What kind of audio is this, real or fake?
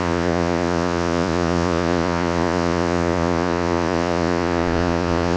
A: fake